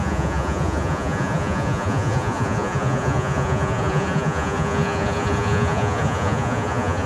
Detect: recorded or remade remade